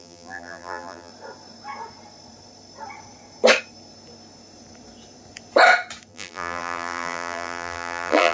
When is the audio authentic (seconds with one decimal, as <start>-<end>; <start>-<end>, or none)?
1.1-6.1